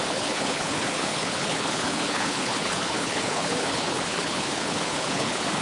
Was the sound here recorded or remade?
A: remade